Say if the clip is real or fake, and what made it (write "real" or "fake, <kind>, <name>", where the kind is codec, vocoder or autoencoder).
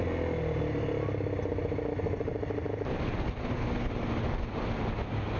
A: real